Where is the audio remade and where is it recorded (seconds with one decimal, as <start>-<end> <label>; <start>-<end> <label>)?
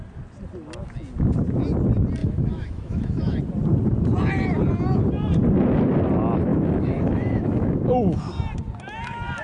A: 0.0-2.2 recorded; 2.2-3.4 remade; 3.4-6.5 recorded; 6.5-8.2 remade; 8.2-9.4 recorded